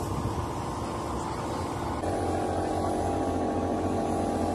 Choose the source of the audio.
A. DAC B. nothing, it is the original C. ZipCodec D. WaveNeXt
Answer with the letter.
B